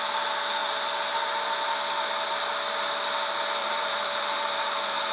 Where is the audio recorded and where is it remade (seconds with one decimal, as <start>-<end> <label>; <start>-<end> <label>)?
0.0-3.6 recorded; 3.6-5.1 remade